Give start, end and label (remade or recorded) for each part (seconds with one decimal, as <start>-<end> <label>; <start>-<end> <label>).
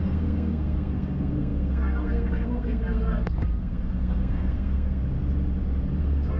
0.0-5.0 remade; 5.0-6.0 recorded; 6.0-6.4 remade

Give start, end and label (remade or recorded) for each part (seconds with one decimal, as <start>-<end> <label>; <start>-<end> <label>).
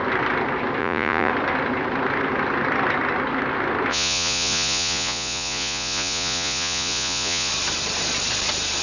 0.0-0.8 recorded; 0.8-1.3 remade; 1.3-3.9 recorded; 3.9-7.5 remade; 7.5-8.8 recorded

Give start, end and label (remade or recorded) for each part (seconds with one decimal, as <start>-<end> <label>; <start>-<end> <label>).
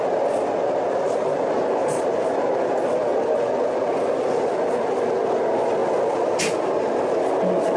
0.0-7.8 recorded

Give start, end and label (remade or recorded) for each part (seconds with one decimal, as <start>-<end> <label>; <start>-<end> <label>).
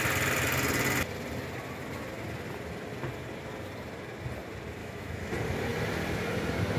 0.0-4.8 recorded; 4.8-5.3 remade; 5.3-6.8 recorded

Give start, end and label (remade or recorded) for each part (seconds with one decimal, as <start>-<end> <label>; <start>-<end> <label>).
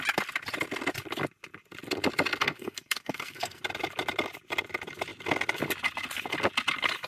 0.0-2.4 recorded; 2.4-3.6 remade; 3.6-7.1 recorded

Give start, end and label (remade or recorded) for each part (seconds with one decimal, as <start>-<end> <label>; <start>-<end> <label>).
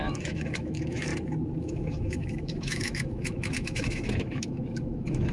0.0-1.1 remade; 1.1-1.6 recorded; 1.6-5.3 remade